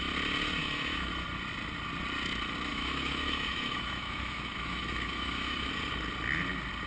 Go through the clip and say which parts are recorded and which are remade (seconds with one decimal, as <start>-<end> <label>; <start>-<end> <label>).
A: 0.0-0.6 recorded; 0.6-1.1 remade; 1.1-2.7 recorded; 2.7-5.7 remade; 5.7-6.9 recorded